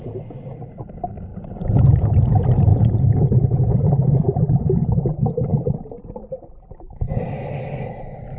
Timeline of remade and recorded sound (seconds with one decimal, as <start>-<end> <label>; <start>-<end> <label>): 0.0-1.3 recorded; 1.3-2.1 remade; 2.1-2.7 recorded; 2.7-3.7 remade; 3.7-5.5 recorded; 5.5-7.0 remade; 7.0-8.4 recorded